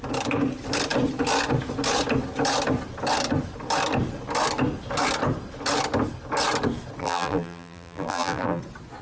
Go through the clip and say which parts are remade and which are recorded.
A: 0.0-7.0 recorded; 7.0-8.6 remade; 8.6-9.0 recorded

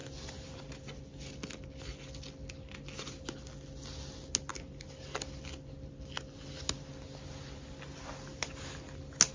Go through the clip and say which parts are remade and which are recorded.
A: 0.0-9.3 recorded

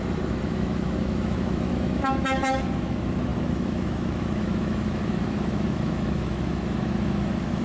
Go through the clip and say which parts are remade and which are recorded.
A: 0.0-7.6 remade

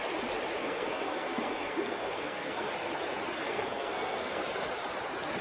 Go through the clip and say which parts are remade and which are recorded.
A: 0.0-0.6 recorded; 0.6-2.7 remade; 2.7-3.4 recorded; 3.4-4.4 remade; 4.4-5.4 recorded

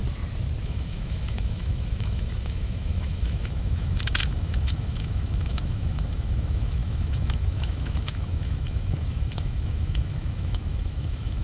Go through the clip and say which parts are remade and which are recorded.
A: 0.0-0.6 recorded; 0.6-11.4 remade

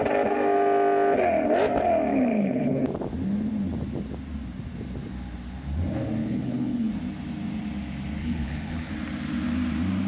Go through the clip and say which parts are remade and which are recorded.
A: 0.0-2.1 recorded; 2.1-2.8 remade; 2.8-6.2 recorded; 6.2-6.9 remade; 6.9-8.2 recorded; 8.2-8.9 remade; 8.9-10.1 recorded

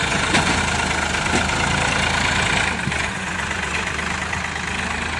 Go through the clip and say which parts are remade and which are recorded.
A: 0.0-0.6 remade; 0.6-3.0 recorded; 3.0-3.9 remade; 3.9-5.2 recorded